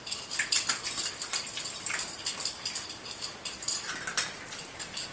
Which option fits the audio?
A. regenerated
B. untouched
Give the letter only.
B